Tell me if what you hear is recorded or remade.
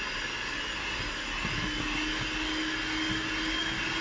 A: recorded